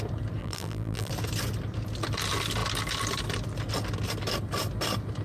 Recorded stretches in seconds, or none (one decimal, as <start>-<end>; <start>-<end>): 0.0-0.4; 1.1-5.2